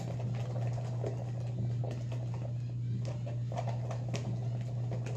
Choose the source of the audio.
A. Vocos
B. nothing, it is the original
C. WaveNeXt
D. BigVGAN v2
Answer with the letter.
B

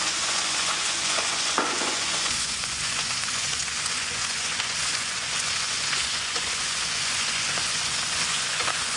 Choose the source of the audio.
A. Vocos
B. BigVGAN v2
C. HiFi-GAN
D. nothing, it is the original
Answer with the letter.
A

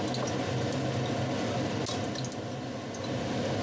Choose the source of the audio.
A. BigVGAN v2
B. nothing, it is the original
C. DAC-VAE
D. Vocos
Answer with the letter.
B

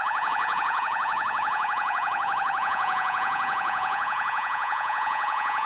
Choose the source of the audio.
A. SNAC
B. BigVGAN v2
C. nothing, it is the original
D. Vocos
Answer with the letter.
D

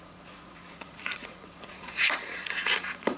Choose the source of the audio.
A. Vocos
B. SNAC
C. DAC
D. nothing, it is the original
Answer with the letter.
A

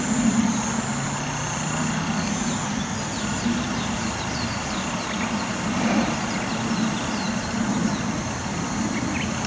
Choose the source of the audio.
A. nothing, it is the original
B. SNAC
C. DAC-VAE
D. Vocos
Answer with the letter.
A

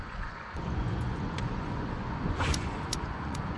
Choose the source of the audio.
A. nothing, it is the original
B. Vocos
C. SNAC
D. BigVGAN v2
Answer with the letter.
B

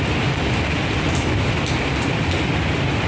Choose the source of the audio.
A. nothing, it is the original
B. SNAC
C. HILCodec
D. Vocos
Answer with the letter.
A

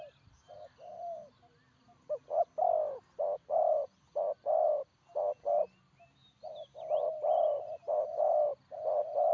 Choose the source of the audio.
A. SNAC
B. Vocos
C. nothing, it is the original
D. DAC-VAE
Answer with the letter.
C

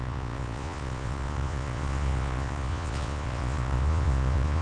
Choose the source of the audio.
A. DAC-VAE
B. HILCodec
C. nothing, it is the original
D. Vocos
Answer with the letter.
D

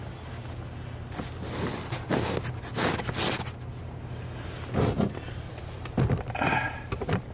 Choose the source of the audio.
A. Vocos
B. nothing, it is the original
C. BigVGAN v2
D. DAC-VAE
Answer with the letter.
B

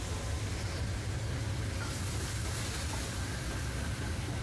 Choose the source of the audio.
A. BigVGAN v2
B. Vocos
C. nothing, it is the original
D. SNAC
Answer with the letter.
C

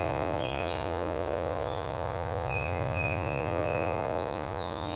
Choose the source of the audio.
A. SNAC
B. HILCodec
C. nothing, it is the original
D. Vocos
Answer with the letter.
D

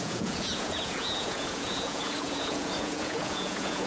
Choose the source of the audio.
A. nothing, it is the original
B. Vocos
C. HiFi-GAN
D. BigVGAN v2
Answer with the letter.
B